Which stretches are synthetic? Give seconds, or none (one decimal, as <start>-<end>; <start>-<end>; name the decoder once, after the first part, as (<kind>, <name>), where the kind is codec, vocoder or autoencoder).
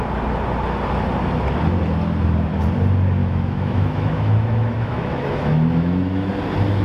3.2-6.3 (autoencoder, DAC-VAE)